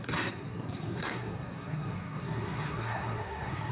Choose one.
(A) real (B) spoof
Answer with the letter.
B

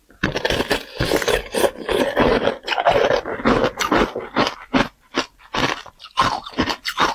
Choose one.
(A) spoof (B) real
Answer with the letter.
B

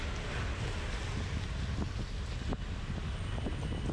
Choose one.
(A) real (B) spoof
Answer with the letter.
A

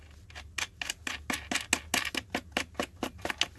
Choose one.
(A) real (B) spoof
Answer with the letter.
A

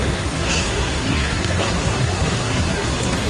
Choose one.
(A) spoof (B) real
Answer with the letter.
A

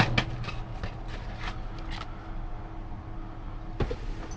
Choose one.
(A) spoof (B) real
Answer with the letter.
B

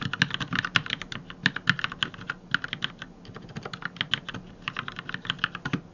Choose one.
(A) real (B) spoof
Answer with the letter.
A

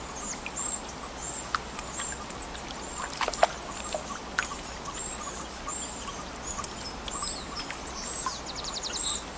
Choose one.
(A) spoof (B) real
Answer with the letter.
B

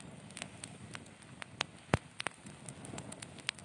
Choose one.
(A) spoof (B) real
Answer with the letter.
B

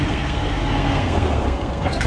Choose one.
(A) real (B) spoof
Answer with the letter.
B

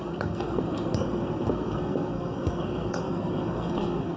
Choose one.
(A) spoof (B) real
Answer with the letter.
A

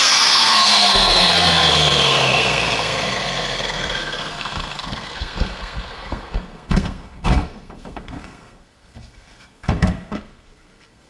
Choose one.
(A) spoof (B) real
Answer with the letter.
A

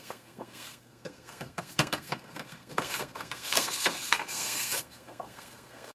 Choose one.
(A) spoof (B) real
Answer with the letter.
A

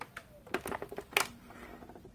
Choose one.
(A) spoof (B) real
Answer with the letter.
B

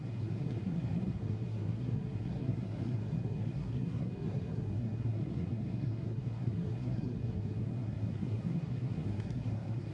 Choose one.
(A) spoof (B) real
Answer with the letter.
A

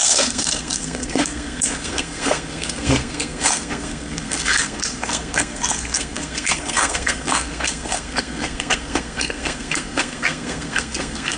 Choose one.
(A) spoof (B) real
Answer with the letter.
A